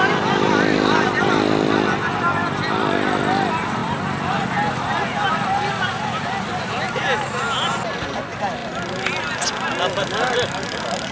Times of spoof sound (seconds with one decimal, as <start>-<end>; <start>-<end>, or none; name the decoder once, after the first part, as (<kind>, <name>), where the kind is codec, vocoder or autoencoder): none